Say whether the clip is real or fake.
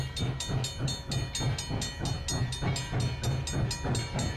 real